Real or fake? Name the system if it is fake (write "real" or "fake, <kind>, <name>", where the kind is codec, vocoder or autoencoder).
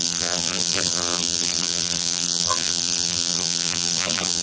fake, vocoder, BigVGAN v2